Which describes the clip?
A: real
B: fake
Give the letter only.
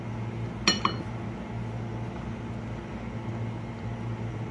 A